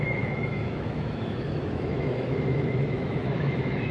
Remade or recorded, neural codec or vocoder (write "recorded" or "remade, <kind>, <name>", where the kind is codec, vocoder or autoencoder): remade, autoencoder, DAC-VAE